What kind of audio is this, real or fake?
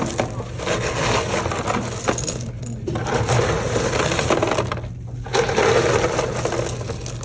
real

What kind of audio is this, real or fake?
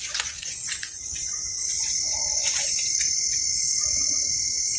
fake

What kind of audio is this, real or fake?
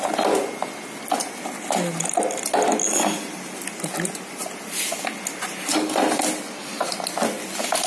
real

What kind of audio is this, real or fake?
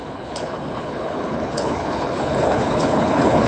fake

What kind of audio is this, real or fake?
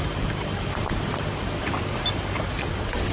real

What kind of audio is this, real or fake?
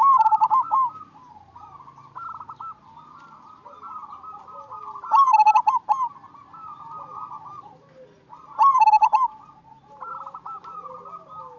real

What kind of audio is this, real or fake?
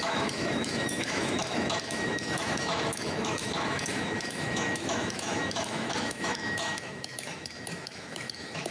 fake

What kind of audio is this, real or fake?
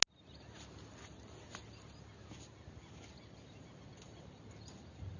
real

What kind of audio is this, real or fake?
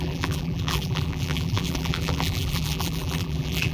fake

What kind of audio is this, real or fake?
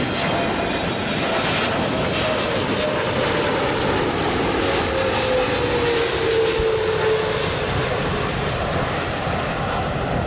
real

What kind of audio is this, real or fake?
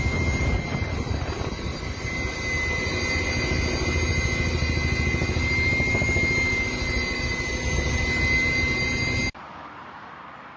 real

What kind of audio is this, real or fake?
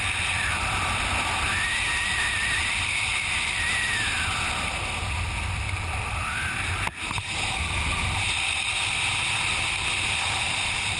real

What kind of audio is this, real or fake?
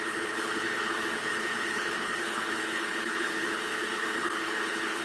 fake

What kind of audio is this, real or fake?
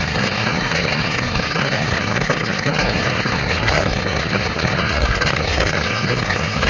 fake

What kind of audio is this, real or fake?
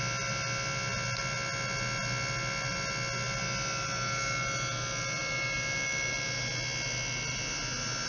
real